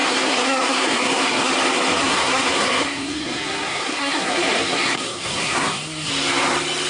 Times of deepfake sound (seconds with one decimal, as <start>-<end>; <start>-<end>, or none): 0.0-1.5; 2.0-6.1